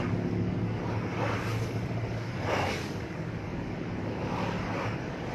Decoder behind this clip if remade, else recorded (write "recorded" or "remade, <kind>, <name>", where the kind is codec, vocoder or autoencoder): remade, codec, DAC